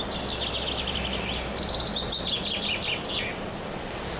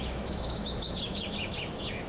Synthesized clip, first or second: second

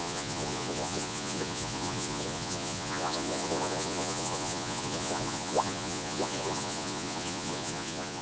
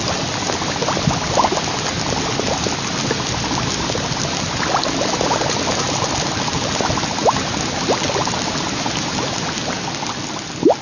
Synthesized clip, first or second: first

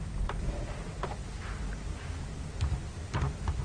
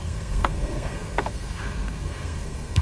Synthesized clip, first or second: second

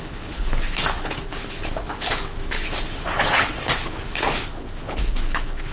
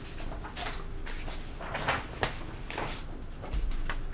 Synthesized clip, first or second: first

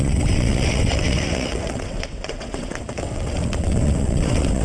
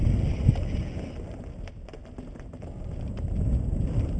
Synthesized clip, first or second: first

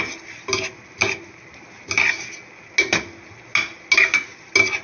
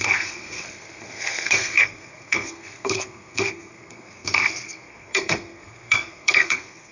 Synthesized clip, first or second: second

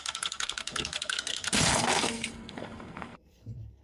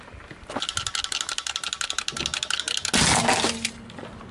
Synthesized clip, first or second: first